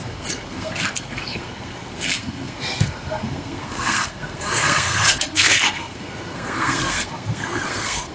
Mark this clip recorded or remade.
remade